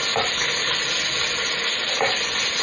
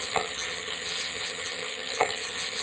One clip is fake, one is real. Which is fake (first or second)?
second